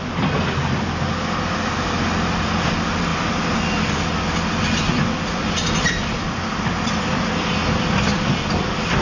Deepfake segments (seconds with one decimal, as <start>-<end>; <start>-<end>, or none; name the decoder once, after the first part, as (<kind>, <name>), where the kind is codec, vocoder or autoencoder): none